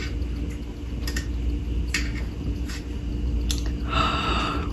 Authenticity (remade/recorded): recorded